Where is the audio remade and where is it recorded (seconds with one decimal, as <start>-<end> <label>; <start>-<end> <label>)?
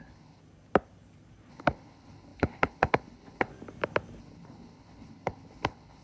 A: 0.0-0.4 remade; 0.4-1.5 recorded; 1.5-3.5 remade; 3.5-4.2 recorded; 4.2-6.0 remade